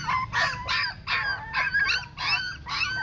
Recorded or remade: recorded